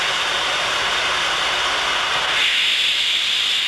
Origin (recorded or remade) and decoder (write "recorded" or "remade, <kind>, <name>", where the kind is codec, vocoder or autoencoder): recorded